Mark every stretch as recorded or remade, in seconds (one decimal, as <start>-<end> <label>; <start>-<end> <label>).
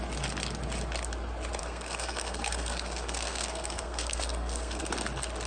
0.0-1.6 recorded; 1.6-4.8 remade; 4.8-5.5 recorded